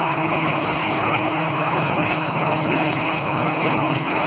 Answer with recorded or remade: remade